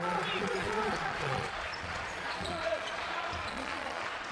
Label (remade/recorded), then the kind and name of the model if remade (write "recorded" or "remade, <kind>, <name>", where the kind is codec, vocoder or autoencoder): remade, vocoder, Vocos